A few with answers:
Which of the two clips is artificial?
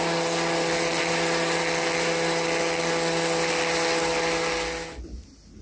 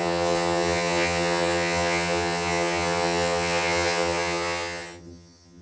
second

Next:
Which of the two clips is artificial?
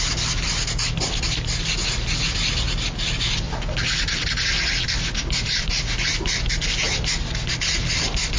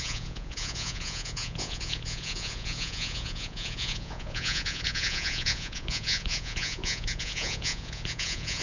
second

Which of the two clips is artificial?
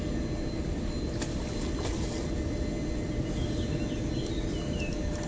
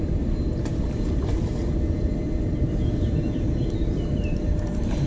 second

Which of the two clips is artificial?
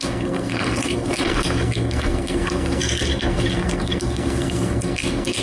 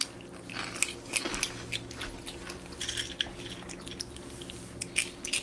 first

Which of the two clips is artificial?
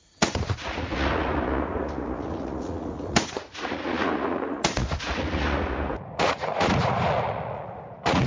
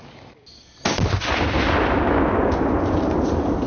first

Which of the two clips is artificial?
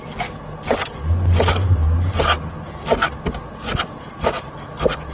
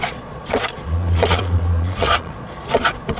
second